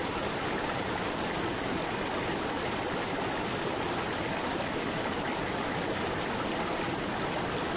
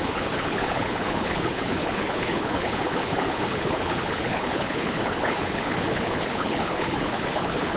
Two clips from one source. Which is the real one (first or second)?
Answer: first